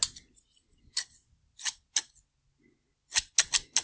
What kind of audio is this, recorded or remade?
recorded